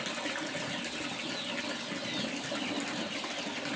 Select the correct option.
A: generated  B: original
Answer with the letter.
B